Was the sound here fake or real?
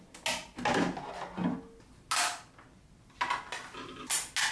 real